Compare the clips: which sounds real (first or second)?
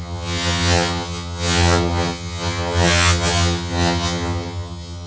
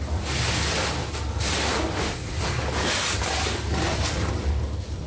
second